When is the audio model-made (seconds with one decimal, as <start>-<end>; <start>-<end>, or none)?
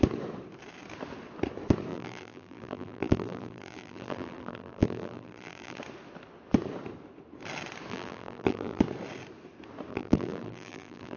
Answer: 1.9-5.8; 7.9-8.8; 9.9-11.2